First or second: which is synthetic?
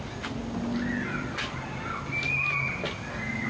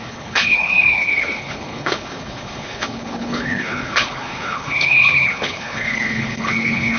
second